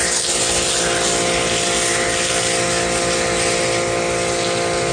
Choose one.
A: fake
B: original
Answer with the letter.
B